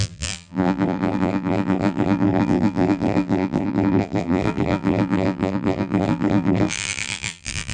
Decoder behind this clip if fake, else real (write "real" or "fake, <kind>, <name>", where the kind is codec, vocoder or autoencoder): fake, vocoder, BigVGAN v2